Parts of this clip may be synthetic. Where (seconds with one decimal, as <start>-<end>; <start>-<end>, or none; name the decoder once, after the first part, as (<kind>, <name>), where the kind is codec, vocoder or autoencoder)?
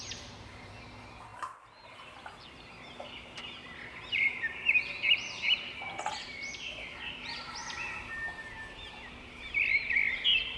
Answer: none